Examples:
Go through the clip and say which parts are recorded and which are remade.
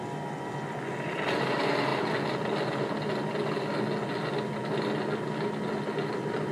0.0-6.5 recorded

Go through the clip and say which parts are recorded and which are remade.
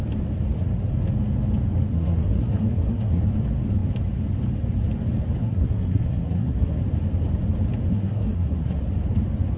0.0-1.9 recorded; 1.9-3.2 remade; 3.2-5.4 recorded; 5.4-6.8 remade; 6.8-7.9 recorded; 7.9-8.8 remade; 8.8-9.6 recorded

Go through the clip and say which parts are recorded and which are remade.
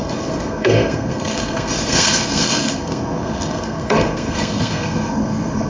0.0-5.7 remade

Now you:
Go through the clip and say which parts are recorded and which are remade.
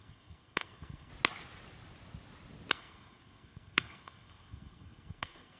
0.0-1.1 remade; 1.1-2.7 recorded; 2.7-5.6 remade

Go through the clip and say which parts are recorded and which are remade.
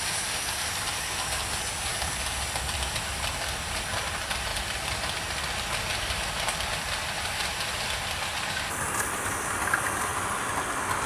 0.0-11.1 recorded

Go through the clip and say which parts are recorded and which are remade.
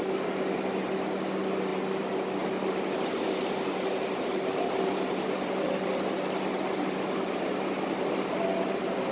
0.0-9.1 recorded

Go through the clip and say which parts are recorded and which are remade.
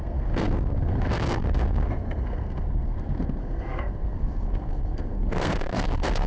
0.0-6.3 remade